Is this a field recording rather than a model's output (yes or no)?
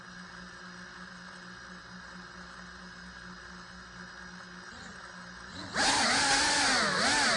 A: yes